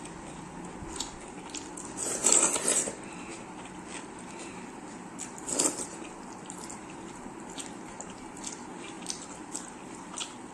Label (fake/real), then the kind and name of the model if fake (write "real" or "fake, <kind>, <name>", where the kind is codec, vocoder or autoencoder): real